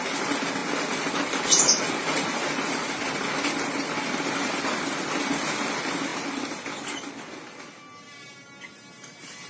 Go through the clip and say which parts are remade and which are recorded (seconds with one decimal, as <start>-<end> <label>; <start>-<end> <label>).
0.0-9.5 recorded